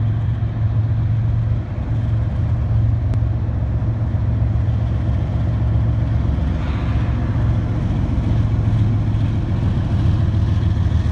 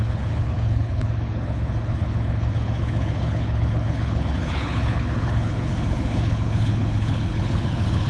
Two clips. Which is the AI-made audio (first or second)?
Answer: second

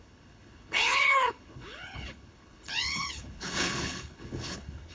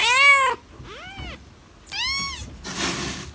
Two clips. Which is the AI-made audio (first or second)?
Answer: first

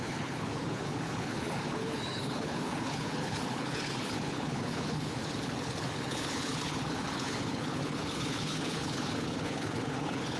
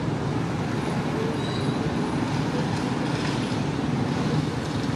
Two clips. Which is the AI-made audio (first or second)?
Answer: first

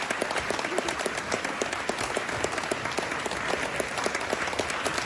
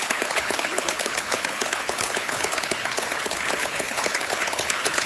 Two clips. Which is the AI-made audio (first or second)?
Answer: second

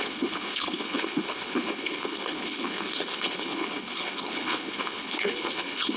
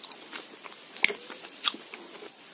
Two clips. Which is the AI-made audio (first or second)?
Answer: first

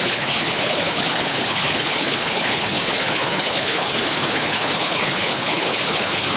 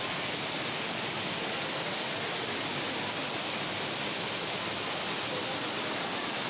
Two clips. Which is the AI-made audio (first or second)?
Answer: first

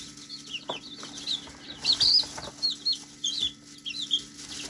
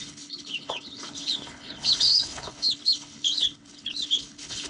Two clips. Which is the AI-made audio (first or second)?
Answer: second